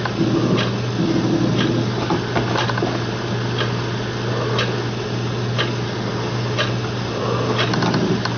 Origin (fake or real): real